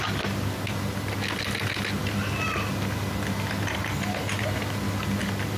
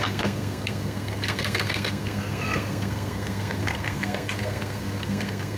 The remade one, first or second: second